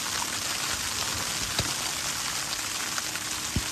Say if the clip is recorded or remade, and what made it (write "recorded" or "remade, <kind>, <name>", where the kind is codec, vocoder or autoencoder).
recorded